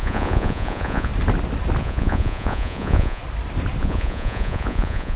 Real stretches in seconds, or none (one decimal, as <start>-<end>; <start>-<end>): 1.1-1.8; 3.2-3.8